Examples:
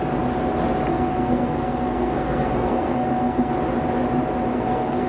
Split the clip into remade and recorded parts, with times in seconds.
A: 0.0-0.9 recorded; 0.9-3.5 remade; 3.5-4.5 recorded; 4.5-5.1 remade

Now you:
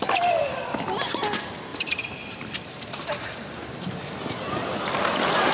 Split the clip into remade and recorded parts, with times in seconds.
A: 0.0-5.5 recorded

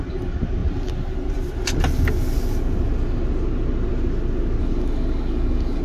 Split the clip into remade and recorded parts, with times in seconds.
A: 0.0-4.6 recorded; 4.6-5.8 remade

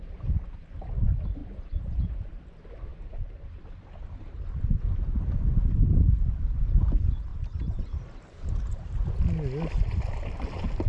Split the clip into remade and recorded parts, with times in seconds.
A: 0.0-1.4 recorded; 1.4-2.1 remade; 2.1-2.9 recorded; 2.9-3.6 remade; 3.6-7.3 recorded; 7.3-7.8 remade; 7.8-10.9 recorded

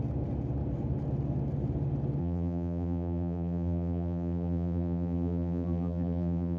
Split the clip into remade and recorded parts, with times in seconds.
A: 0.0-2.2 recorded; 2.2-6.6 remade

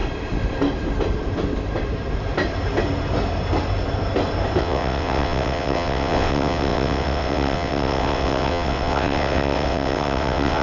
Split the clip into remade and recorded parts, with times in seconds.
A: 0.0-4.6 recorded; 4.6-10.6 remade

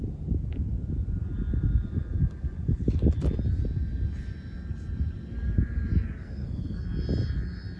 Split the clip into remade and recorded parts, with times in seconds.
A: 0.0-6.2 recorded; 6.2-6.8 remade; 6.8-7.8 recorded

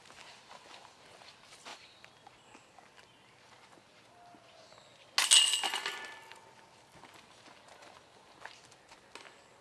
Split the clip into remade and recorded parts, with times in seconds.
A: 0.0-9.6 recorded